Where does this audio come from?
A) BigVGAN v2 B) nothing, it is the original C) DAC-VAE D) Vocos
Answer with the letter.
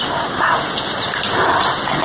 B